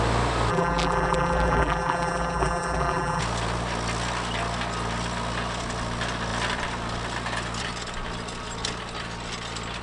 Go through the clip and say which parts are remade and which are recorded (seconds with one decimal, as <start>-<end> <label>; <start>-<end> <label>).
0.0-0.5 recorded; 0.5-3.2 remade; 3.2-9.8 recorded